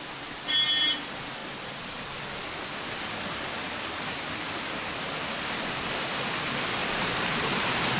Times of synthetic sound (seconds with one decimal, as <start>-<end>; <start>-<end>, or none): 6.8-7.6